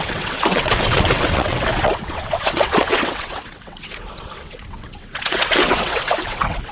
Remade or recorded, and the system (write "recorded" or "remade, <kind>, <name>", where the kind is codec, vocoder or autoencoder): remade, vocoder, WaveNeXt